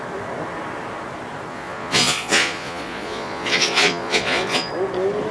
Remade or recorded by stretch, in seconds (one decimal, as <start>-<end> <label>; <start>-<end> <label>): 0.0-1.5 recorded; 1.5-4.7 remade; 4.7-5.3 recorded